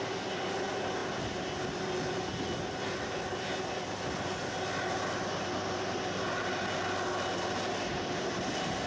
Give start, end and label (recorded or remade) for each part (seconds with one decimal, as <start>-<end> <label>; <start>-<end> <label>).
0.0-8.9 recorded